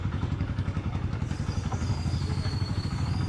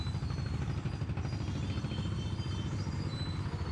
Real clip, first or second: second